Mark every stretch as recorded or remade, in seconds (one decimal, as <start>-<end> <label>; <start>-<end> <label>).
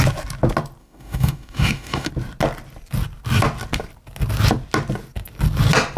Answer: 0.0-0.8 recorded; 0.8-2.1 remade; 2.1-6.0 recorded